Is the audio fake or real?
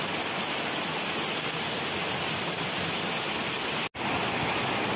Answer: real